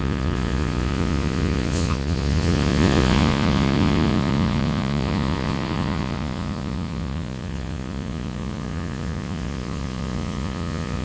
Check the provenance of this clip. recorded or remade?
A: remade